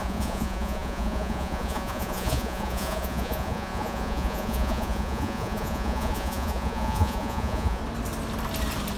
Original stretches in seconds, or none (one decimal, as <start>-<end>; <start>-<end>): 7.8-9.0

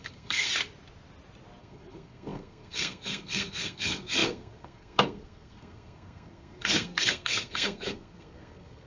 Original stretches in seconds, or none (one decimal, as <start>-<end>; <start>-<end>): 0.5-1.6

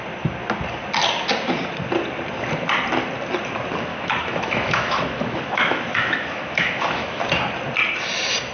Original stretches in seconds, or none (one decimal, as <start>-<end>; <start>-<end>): 0.0-3.9; 7.2-8.5